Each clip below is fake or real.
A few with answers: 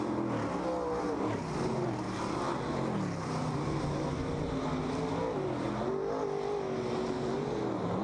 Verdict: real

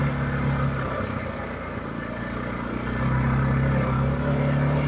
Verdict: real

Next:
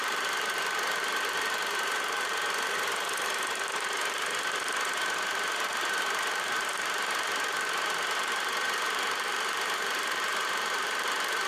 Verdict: fake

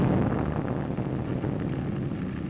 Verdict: real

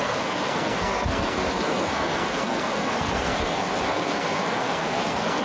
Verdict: fake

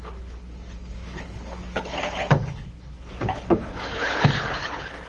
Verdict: fake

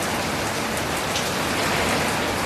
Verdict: real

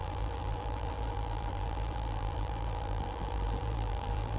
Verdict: fake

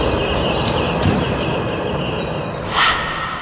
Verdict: real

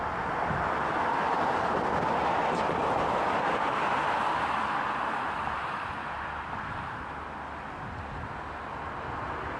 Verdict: real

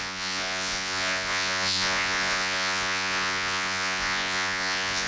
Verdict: fake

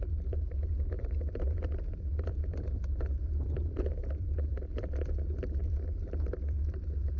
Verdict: fake